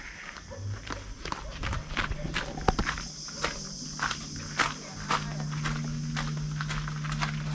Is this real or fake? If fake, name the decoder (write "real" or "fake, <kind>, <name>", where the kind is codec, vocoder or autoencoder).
real